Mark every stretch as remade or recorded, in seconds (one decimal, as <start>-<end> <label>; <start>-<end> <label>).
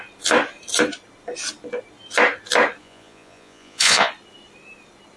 0.0-2.8 recorded; 2.8-4.1 remade; 4.1-5.2 recorded